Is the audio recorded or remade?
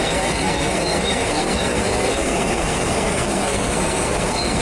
remade